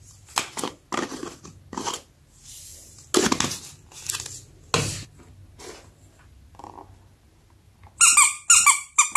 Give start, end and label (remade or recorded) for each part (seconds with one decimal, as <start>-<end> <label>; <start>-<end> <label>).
0.0-9.2 recorded

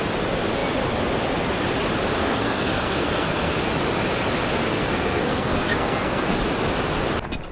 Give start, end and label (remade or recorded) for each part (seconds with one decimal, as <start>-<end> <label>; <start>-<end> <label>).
0.0-2.2 recorded; 2.2-3.5 remade; 3.5-4.7 recorded; 4.7-6.4 remade; 6.4-7.5 recorded

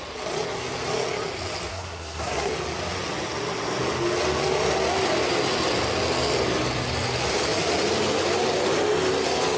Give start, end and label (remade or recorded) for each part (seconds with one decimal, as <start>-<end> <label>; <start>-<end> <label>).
0.0-1.7 recorded; 1.7-2.5 remade; 2.5-9.6 recorded

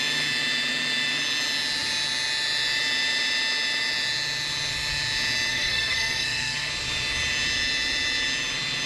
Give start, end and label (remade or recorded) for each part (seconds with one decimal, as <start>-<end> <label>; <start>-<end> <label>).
0.0-5.5 recorded; 5.5-6.7 remade; 6.7-8.9 recorded